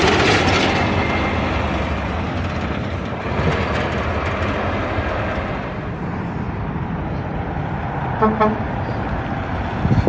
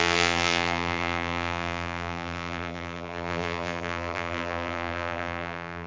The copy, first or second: second